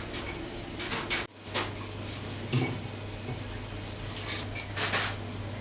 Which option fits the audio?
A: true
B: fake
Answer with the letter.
A